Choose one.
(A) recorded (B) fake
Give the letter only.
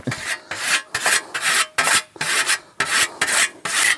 A